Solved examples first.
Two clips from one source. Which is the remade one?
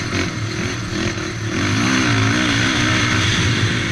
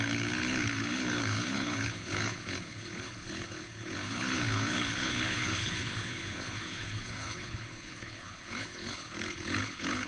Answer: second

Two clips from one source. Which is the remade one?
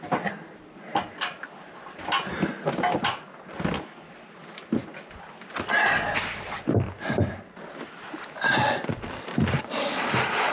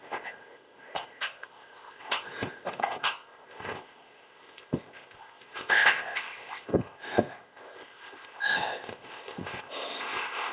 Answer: second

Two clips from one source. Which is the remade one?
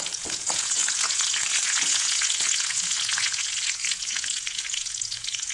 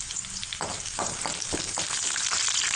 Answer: first